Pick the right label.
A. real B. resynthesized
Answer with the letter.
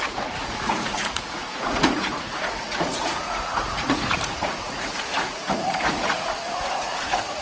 B